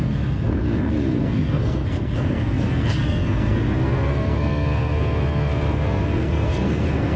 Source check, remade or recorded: remade